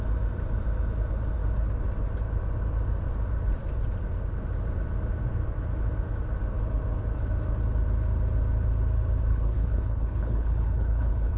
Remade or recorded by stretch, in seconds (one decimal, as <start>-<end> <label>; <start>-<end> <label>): 0.0-9.3 recorded; 9.3-11.4 remade